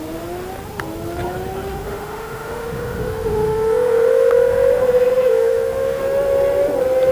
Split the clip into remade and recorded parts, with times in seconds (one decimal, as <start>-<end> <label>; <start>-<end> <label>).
0.0-1.7 recorded; 1.7-6.0 remade; 6.0-7.1 recorded